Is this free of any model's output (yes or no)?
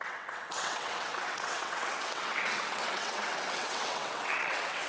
no